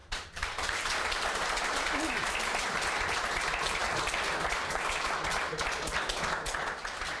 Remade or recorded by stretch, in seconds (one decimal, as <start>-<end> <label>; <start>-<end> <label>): 0.0-2.3 remade; 2.3-7.2 recorded